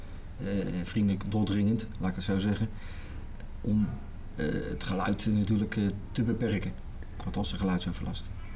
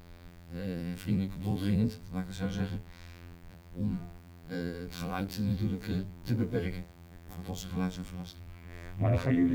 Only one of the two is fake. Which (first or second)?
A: second